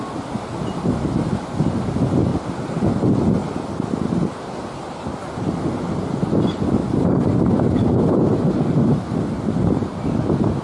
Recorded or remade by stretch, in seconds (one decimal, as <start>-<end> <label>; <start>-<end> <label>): 0.0-6.8 recorded; 6.8-9.0 remade; 9.0-10.6 recorded